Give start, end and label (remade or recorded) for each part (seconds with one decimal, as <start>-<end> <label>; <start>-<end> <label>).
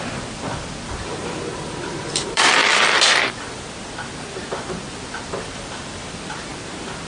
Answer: 0.0-6.5 remade; 6.5-7.1 recorded